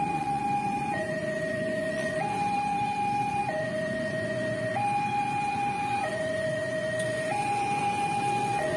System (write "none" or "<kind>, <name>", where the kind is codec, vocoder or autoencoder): vocoder, Vocos